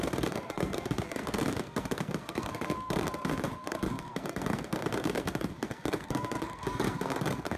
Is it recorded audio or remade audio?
remade